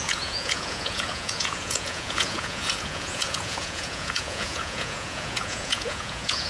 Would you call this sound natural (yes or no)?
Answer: no